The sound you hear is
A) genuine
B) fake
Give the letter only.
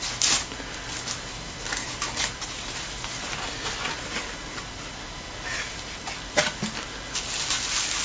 A